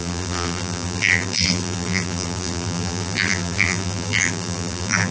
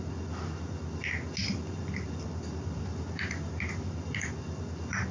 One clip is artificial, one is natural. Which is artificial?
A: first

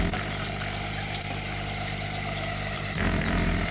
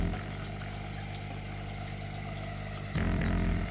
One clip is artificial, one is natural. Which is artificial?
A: first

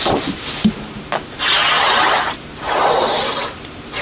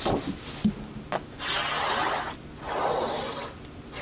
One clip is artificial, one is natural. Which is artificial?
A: first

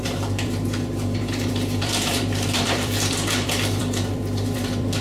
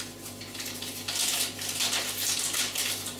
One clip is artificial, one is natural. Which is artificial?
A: first